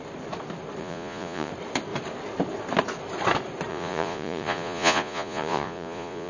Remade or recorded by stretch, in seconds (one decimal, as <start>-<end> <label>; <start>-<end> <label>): 0.0-0.8 recorded; 0.8-1.5 remade; 1.5-3.7 recorded; 3.7-6.3 remade